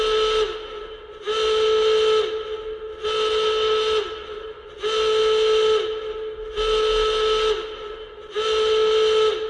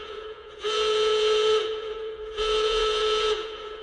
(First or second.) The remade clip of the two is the second